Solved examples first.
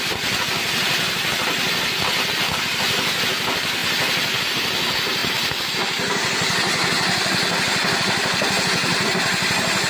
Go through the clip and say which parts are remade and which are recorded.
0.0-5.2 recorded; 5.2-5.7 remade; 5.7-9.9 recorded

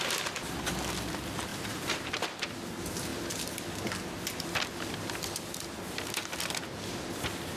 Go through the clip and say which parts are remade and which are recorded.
0.0-1.5 recorded; 1.5-2.1 remade; 2.1-7.6 recorded

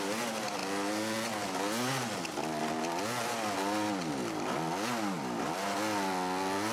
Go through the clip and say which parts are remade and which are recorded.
0.0-6.7 recorded

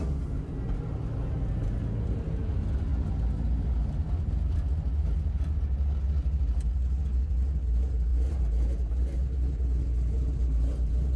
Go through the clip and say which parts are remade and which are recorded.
0.0-8.1 recorded; 8.1-11.2 remade

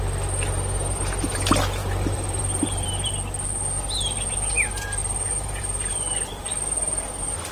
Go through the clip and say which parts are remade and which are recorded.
0.0-1.8 recorded; 1.8-3.1 remade; 3.1-5.0 recorded; 5.0-5.6 remade; 5.6-7.5 recorded

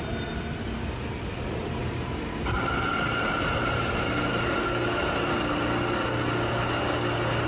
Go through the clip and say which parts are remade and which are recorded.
0.0-1.8 recorded; 1.8-3.4 remade; 3.4-7.5 recorded

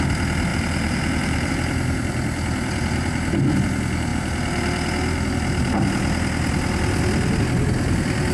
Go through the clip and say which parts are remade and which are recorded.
0.0-0.5 recorded; 0.5-1.5 remade; 1.5-8.3 recorded